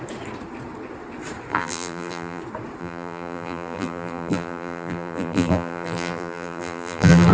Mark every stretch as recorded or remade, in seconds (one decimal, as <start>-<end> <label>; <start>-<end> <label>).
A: 0.0-1.5 recorded; 1.5-2.4 remade; 2.4-2.8 recorded; 2.8-7.3 remade